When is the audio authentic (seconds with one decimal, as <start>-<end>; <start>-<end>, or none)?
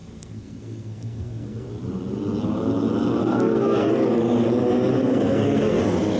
1.7-3.2; 3.9-5.1; 5.8-6.2